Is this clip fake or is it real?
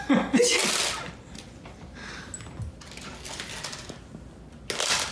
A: real